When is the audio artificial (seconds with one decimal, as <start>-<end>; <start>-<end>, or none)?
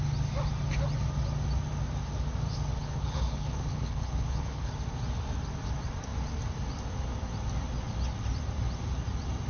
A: 2.8-4.7